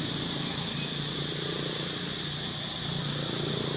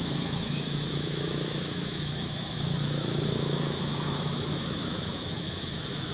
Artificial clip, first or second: second